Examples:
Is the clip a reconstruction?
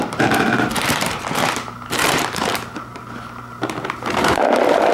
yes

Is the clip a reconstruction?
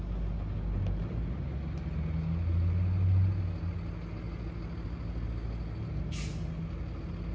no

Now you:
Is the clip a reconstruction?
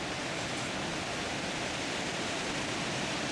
no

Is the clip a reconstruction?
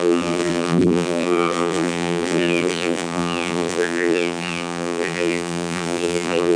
yes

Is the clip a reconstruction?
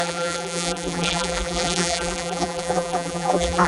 yes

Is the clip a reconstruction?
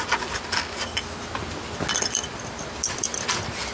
no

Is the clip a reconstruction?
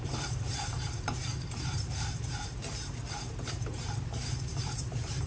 yes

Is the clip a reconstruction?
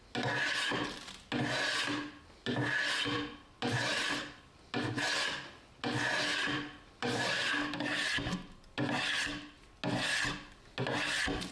no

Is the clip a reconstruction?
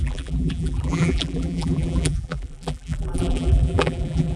yes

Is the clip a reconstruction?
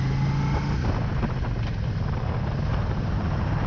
no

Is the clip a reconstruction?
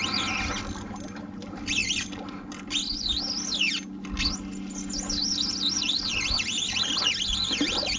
no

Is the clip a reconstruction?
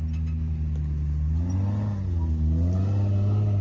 no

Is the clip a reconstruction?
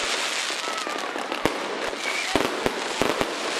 no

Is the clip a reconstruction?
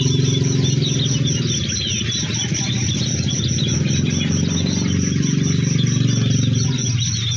no